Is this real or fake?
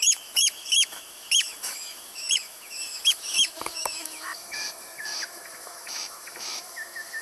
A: fake